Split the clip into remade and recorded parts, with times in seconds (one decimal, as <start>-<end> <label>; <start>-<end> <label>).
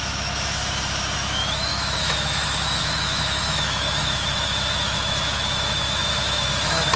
0.0-7.0 remade